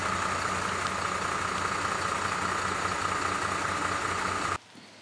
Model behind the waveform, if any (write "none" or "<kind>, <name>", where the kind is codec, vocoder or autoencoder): none